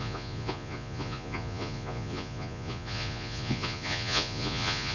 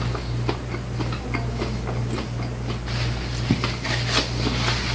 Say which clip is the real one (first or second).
second